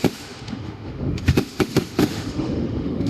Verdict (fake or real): fake